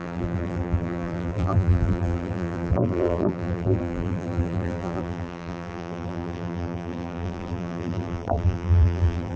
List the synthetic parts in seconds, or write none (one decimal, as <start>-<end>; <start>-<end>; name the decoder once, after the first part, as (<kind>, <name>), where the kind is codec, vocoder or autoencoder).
0.0-9.4 (vocoder, BigVGAN v2)